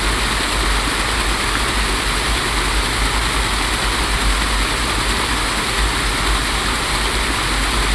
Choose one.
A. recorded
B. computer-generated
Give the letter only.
A